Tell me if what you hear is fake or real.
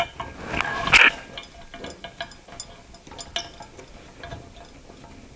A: real